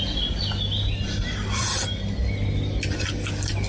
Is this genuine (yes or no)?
yes